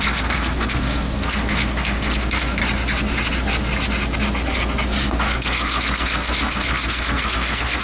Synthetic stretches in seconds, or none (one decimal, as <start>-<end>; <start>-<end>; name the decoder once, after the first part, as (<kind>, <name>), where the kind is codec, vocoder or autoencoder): 0.0-2.6 (codec, SNAC); 5.0-7.8